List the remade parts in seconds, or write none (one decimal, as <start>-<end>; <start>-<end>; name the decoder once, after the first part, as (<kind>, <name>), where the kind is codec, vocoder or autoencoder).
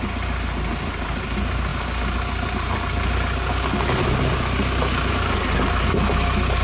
none